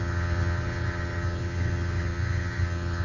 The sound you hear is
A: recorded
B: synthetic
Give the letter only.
B